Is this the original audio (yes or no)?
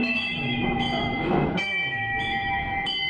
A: no